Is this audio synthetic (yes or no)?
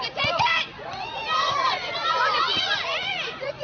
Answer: yes